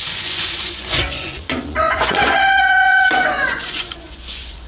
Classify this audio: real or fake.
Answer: fake